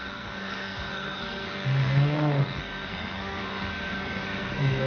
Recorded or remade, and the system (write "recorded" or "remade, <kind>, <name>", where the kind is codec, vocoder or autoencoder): remade, codec, SNAC